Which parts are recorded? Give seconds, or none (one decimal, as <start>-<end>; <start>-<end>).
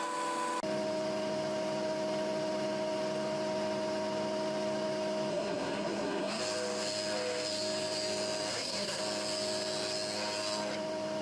0.0-5.3; 6.4-8.5; 9.0-11.2